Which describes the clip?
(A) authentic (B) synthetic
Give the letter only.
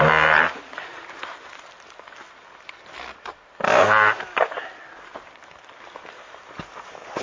A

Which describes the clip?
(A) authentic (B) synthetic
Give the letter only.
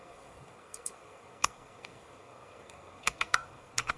B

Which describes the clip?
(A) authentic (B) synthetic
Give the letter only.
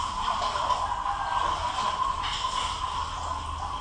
A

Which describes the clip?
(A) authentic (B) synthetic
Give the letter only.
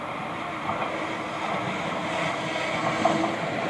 A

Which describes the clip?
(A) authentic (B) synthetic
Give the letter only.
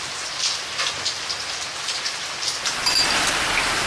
A